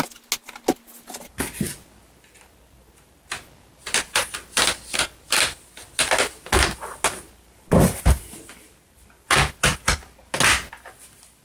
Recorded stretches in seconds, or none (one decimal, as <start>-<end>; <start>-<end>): 0.0-9.7; 10.3-11.4